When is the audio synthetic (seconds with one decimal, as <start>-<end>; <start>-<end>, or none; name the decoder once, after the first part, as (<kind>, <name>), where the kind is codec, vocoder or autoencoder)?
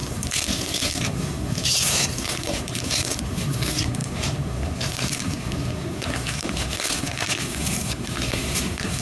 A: 0.0-9.0 (codec, SNAC)